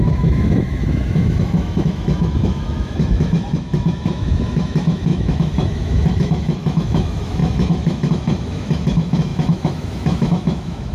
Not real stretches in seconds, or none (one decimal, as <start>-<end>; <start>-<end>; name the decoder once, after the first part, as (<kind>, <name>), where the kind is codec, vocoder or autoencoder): 0.0-10.9 (autoencoder, DAC-VAE)